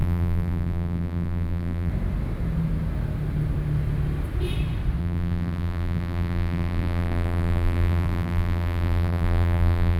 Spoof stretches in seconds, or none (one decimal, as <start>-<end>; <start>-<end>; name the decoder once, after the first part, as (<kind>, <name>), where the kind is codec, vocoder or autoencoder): 0.0-1.9 (vocoder, BigVGAN v2); 5.0-10.0